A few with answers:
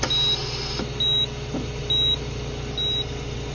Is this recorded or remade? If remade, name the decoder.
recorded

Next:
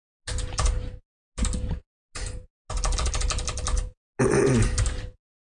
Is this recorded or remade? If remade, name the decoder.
recorded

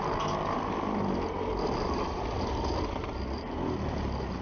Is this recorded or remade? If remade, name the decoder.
recorded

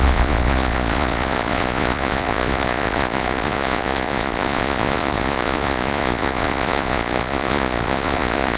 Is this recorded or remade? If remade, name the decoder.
remade, vocoder, Vocos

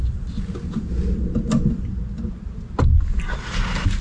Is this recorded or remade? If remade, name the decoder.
recorded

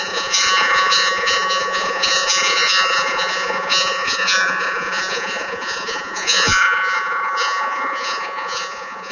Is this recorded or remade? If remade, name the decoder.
remade, vocoder, Vocos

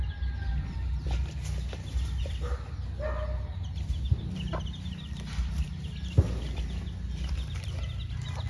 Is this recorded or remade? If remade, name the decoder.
recorded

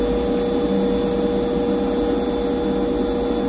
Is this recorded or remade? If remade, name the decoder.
recorded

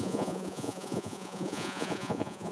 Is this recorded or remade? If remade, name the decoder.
remade, vocoder, Vocos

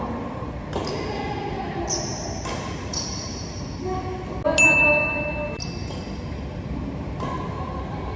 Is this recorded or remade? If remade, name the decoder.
recorded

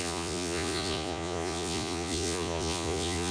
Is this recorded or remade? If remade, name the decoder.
remade, vocoder, Vocos